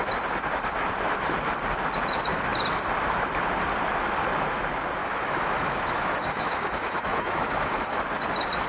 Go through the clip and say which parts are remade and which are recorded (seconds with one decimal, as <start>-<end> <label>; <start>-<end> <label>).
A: 0.0-5.0 recorded; 5.0-8.0 remade; 8.0-8.7 recorded